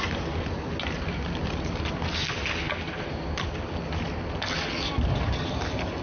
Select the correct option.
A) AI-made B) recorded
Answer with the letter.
B